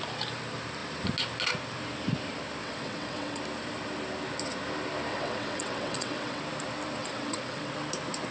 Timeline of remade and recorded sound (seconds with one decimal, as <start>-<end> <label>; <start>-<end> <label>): 0.0-2.6 recorded; 2.6-3.4 remade; 3.4-5.1 recorded; 5.1-6.4 remade; 6.4-7.0 recorded; 7.0-7.7 remade; 7.7-8.3 recorded